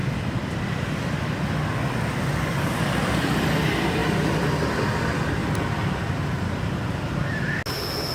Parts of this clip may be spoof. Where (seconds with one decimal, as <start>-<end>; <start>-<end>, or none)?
none